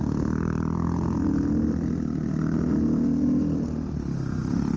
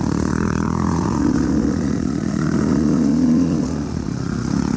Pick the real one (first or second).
first